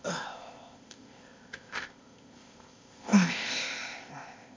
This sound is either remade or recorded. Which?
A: remade